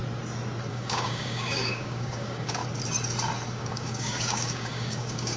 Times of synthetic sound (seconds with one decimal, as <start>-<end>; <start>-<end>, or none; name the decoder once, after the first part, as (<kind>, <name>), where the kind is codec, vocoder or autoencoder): 0.7-2.6 (codec, DAC); 3.5-5.4